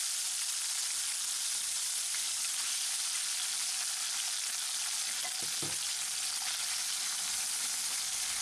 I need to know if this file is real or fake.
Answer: real